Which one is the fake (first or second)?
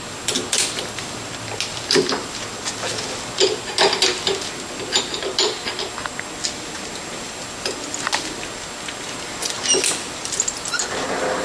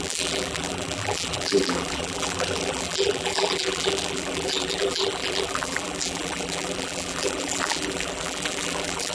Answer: second